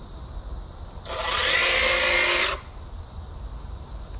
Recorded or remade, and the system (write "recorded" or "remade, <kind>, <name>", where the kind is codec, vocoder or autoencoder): recorded